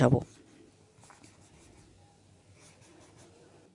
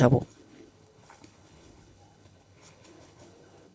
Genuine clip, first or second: first